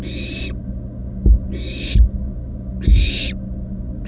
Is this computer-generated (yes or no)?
no